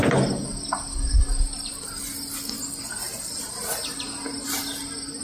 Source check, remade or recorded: recorded